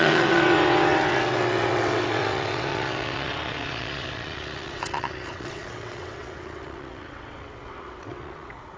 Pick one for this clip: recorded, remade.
remade